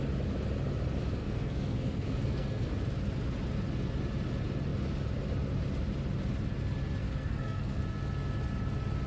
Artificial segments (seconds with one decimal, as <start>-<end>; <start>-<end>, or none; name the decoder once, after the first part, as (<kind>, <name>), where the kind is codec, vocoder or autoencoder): 1.2-2.7 (codec, SNAC); 7.0-7.8